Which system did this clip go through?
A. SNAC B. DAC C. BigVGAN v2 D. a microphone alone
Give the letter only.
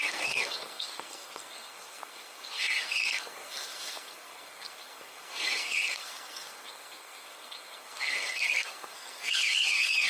A